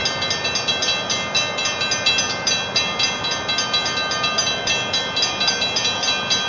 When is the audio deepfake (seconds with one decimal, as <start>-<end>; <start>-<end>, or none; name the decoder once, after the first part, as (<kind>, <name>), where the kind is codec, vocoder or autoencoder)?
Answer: none

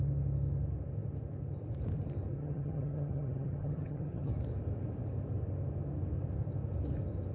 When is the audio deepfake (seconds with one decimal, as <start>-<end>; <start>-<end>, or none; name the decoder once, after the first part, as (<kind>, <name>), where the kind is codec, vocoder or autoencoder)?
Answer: 2.3-4.3 (vocoder, HiFi-GAN)

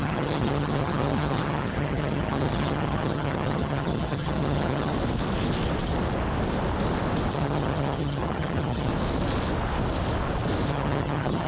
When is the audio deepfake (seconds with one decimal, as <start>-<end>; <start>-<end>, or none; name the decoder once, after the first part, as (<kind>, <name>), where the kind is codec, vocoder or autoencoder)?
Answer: 0.0-4.9 (vocoder, HiFi-GAN); 7.3-8.9; 10.7-11.5

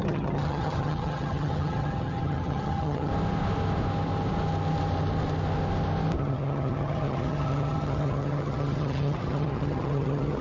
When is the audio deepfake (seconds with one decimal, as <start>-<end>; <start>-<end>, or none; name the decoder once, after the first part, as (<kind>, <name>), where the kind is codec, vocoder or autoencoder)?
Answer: 0.0-3.1 (vocoder, HiFi-GAN); 6.2-10.4

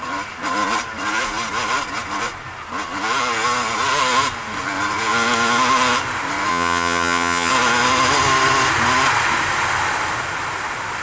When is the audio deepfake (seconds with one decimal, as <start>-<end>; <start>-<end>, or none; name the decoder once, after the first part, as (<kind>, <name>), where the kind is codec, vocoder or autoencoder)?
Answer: 6.5-7.5 (vocoder, HiFi-GAN)

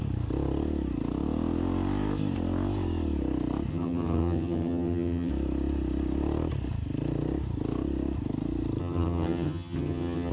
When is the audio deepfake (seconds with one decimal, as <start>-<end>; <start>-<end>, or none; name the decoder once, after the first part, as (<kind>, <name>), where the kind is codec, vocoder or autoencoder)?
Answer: 3.7-5.3 (vocoder, HiFi-GAN); 8.8-10.3

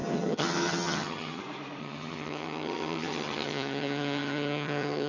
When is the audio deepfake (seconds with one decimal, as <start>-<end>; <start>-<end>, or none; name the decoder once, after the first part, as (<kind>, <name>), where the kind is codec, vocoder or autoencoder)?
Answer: 0.0-1.4 (vocoder, HiFi-GAN); 1.8-5.1

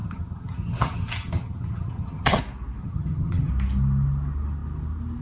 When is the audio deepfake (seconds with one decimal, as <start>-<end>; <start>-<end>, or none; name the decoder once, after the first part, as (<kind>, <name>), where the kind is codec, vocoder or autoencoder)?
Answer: 0.0-2.4 (vocoder, HiFi-GAN); 2.8-3.5